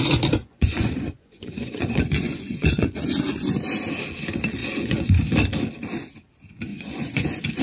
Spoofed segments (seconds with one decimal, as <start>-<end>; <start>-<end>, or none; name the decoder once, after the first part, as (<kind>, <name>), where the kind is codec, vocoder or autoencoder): 0.4-3.6 (vocoder, Vocos); 4.6-5.2; 6.7-7.6